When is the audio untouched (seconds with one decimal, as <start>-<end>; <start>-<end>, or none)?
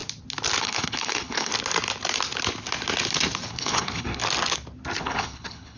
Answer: 0.0-0.6; 1.5-3.5; 4.2-5.0